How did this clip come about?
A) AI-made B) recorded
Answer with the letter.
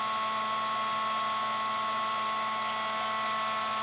B